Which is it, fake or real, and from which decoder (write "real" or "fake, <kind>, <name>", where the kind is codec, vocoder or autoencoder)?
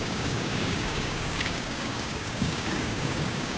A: fake, codec, DAC